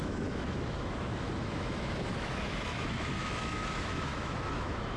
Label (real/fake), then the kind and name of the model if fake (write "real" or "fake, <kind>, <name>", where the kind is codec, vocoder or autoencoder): fake, autoencoder, DAC-VAE